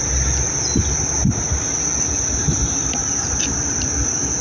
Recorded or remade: recorded